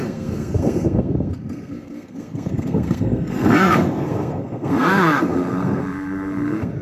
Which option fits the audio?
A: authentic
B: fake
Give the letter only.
B